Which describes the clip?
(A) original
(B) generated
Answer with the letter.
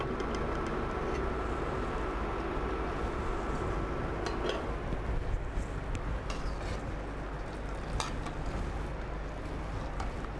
A